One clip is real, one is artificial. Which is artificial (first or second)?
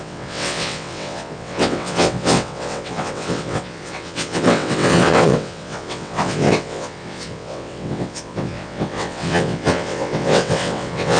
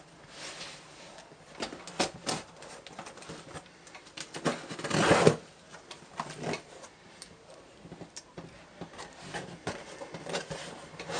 first